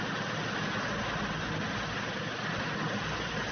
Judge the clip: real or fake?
real